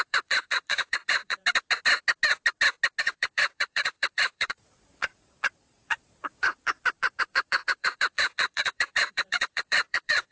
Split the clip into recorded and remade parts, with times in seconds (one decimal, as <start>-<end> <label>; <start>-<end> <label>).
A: 0.0-1.4 remade; 1.4-3.0 recorded; 3.0-10.3 remade